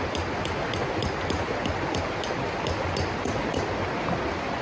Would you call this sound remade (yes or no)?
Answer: no